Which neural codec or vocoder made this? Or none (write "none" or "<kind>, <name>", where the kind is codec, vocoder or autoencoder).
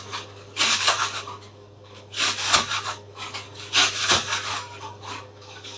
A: codec, DAC